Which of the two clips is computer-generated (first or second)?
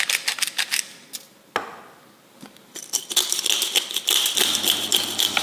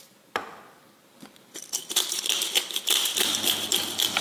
second